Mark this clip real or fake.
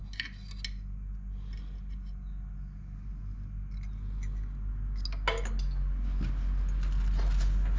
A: real